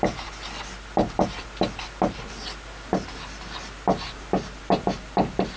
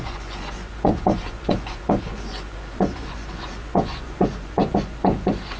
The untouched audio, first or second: first